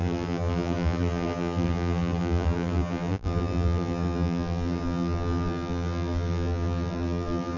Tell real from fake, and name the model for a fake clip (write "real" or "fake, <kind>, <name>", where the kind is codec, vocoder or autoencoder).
fake, vocoder, BigVGAN v2